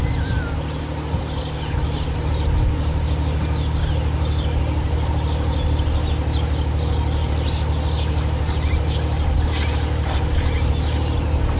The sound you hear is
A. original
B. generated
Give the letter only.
A